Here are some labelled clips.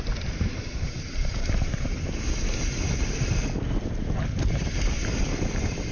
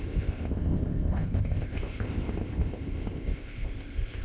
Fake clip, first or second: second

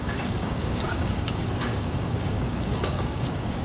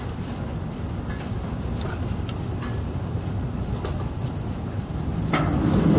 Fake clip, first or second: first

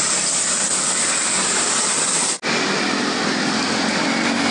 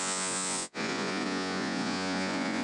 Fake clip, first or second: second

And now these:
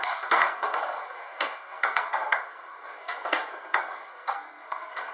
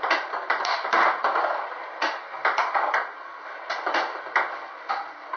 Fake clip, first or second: first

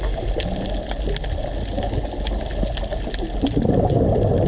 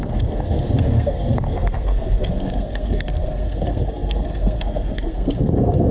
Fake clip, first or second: second